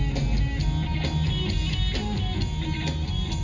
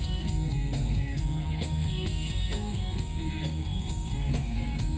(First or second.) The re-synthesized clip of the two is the second